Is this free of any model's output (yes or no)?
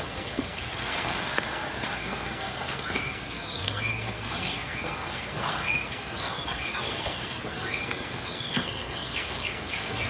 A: no